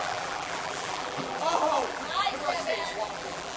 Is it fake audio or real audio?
fake